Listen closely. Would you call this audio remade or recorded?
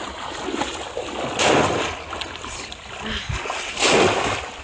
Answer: recorded